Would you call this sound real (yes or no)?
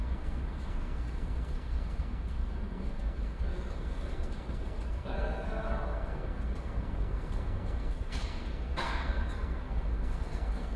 no